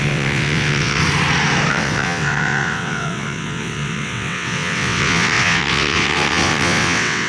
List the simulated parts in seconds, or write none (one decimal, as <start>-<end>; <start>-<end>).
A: 0.0-1.0; 1.7-7.3